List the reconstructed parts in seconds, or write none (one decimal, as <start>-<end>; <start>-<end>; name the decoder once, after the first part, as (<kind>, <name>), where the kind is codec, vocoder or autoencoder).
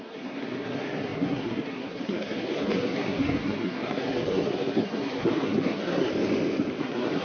0.0-6.1 (codec, SNAC); 6.8-7.2